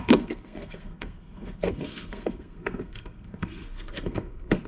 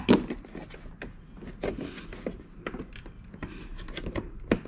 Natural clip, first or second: second